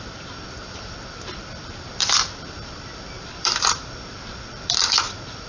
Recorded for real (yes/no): no